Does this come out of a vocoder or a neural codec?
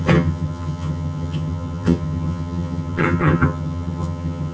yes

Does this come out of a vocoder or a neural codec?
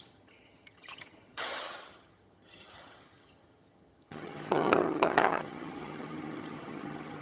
yes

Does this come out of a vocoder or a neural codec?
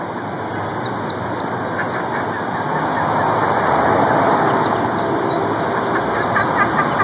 no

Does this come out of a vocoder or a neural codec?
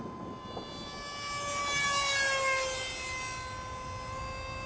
no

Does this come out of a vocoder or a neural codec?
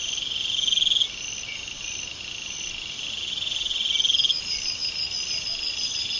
no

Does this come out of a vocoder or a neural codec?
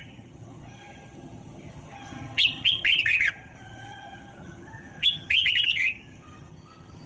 yes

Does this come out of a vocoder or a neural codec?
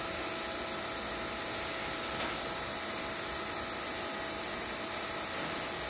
no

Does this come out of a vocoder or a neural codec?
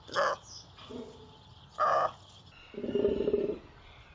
no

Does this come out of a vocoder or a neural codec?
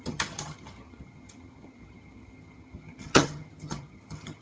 yes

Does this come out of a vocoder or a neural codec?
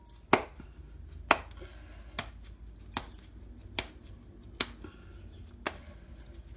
no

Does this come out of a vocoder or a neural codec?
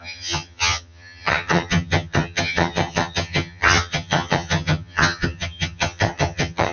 yes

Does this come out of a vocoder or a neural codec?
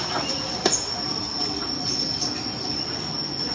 no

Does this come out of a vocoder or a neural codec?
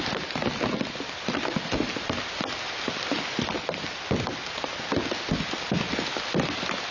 no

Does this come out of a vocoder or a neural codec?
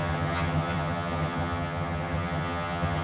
yes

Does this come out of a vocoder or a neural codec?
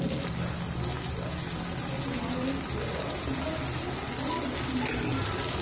no